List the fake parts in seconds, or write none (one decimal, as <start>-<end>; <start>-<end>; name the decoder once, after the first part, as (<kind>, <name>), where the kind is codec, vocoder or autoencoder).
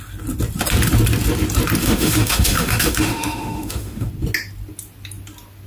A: 1.8-4.1 (autoencoder, DAC-VAE)